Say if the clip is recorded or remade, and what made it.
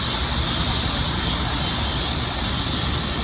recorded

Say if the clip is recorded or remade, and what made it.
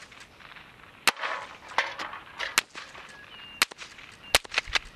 recorded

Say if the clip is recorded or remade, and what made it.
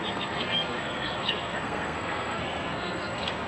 remade, codec, SNAC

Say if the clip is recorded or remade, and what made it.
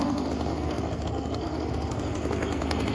remade, codec, SNAC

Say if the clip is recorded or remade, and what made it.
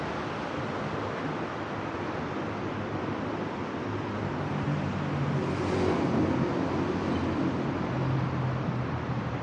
recorded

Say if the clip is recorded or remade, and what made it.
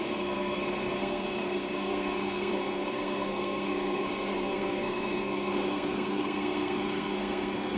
remade, codec, SNAC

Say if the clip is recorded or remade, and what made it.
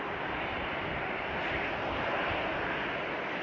recorded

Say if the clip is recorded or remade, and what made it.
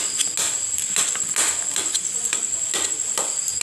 recorded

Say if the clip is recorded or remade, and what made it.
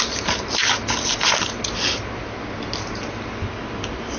recorded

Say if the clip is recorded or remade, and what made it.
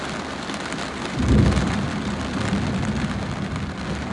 recorded